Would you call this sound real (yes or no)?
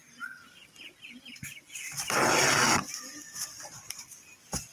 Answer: yes